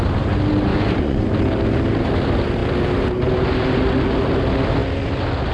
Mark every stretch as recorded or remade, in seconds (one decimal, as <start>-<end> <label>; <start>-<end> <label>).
0.0-0.7 recorded; 0.7-1.2 remade; 1.2-5.5 recorded